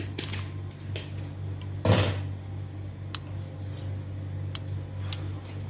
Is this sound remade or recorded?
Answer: recorded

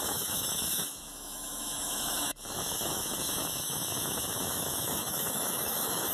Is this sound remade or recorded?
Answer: remade